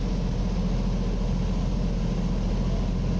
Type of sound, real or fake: real